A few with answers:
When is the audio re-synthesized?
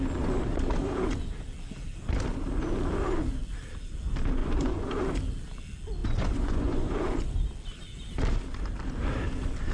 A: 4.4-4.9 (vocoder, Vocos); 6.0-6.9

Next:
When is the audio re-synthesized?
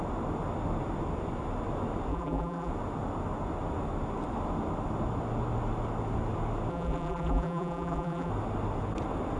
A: 2.1-2.7 (vocoder, BigVGAN v2); 6.7-8.3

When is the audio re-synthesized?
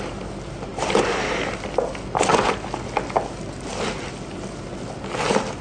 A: none